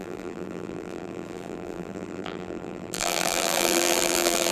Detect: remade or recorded remade